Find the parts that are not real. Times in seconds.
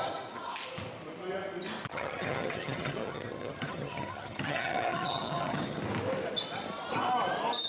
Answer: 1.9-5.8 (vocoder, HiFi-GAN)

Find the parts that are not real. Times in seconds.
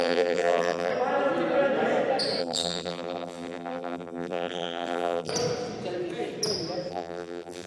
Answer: 0.0-0.9 (vocoder, BigVGAN v2); 2.4-5.3; 6.9-7.7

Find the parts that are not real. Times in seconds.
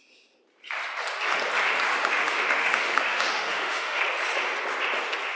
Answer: 1.9-4.0 (autoencoder, DAC-VAE)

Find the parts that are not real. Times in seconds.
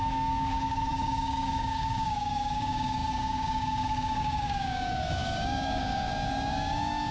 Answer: 0.0-7.1 (codec, DAC)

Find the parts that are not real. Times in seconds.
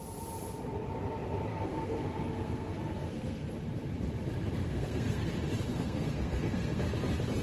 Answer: 1.5-3.5 (codec, SNAC); 4.6-5.3; 5.7-6.8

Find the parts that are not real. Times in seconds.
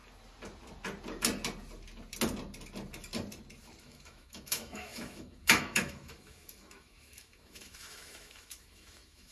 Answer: 3.8-9.3 (autoencoder, DAC-VAE)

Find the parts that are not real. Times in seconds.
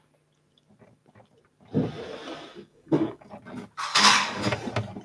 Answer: 2.5-3.3 (codec, DAC); 3.9-4.4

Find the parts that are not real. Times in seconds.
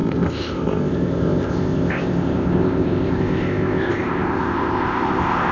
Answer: 0.0-5.5 (codec, ZipCodec)